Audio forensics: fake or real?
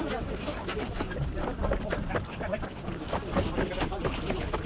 real